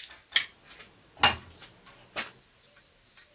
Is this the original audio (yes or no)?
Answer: yes